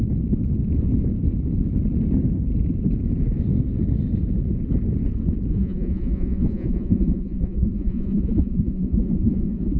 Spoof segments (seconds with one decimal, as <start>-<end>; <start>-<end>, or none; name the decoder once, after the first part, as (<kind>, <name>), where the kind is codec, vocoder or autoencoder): 5.5-9.8 (vocoder, Vocos)